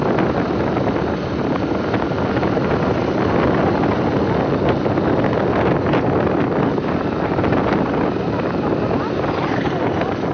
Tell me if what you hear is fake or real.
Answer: real